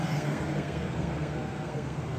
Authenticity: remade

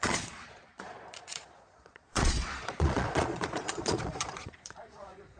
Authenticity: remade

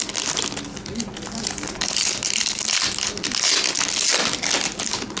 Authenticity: recorded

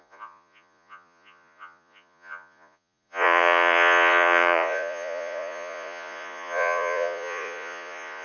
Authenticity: remade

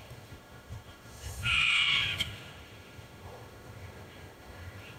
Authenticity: remade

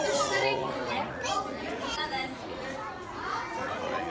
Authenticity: remade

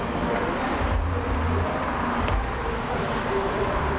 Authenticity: recorded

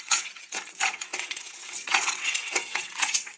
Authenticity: remade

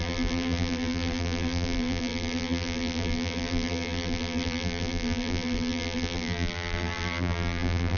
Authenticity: remade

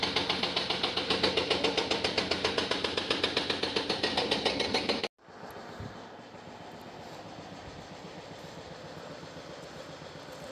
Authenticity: recorded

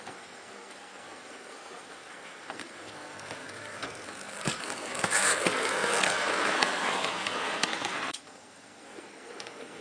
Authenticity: remade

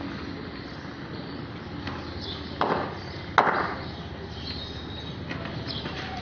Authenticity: recorded